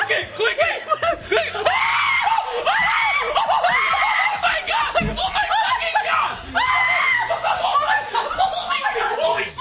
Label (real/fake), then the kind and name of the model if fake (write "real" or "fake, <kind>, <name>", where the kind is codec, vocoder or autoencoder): real